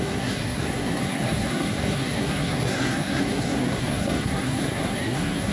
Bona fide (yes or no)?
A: no